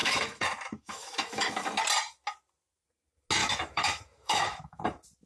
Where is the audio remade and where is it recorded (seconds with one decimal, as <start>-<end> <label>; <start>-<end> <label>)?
0.0-1.7 remade; 1.7-3.4 recorded; 3.4-4.8 remade; 4.8-5.3 recorded

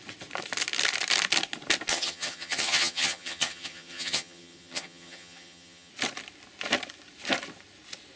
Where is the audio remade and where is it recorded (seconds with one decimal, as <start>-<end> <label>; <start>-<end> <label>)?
0.0-1.9 recorded; 1.9-5.9 remade; 5.9-8.2 recorded

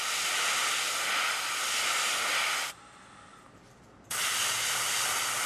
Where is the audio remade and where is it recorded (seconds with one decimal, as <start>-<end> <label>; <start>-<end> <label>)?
0.0-5.5 recorded

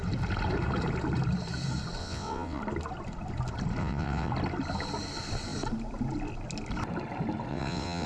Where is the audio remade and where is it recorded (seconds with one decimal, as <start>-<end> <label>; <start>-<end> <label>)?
0.0-2.0 recorded; 2.0-2.6 remade; 2.6-3.8 recorded; 3.8-4.3 remade; 4.3-7.5 recorded; 7.5-8.1 remade

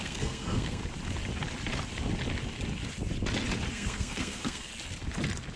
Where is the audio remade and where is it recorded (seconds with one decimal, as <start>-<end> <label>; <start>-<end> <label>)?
0.0-0.8 remade; 0.8-3.7 recorded; 3.7-4.7 remade; 4.7-5.6 recorded

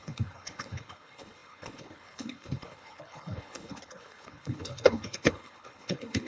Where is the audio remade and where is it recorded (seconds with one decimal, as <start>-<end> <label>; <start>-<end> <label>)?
0.0-6.3 remade